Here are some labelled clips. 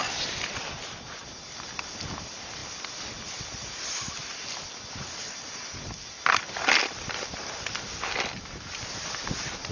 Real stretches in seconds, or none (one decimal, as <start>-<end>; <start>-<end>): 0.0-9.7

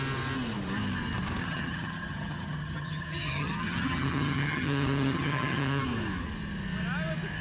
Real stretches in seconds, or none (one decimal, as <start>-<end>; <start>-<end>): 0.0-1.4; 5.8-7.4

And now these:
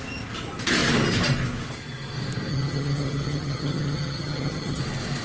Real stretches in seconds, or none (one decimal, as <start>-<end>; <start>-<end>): 0.0-2.5; 4.8-5.2

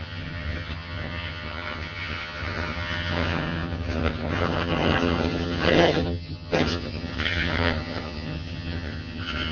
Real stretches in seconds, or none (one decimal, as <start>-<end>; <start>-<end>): none

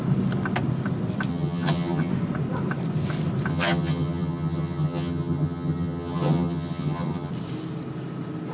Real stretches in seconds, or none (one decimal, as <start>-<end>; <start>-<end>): 0.0-1.3; 2.1-3.5; 7.3-8.5

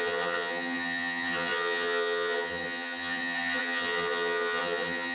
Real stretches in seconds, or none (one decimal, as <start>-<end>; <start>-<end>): none

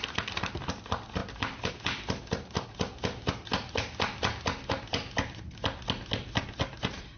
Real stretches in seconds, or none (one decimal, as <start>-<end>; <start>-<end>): 0.0-7.2

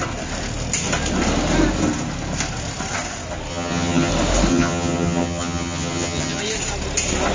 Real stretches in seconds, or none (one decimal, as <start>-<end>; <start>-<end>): 0.0-3.5; 4.1-4.5; 6.4-7.3